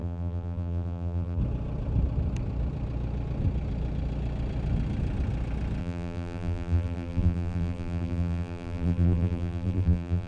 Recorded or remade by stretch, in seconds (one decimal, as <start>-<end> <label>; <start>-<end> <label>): 0.0-1.4 remade; 1.4-5.8 recorded; 5.8-10.3 remade